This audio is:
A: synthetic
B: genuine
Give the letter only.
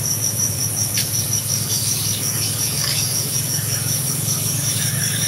A